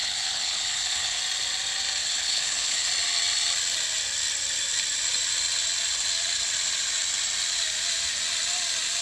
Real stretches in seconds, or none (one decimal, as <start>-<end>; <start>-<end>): 1.2-2.0; 2.9-9.0

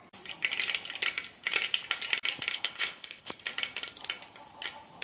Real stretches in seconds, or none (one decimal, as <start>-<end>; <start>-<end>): 0.0-2.5; 3.3-5.0

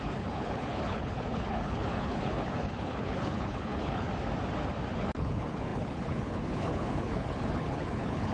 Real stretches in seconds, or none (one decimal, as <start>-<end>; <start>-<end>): 4.1-4.9

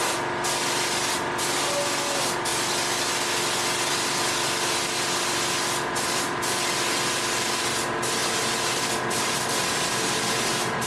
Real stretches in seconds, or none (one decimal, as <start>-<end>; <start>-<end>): 0.0-10.9

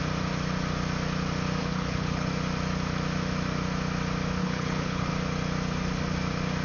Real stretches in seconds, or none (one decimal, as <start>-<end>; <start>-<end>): 0.0-1.6; 2.3-4.4; 5.1-6.6